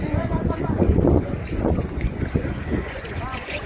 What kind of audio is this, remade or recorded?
remade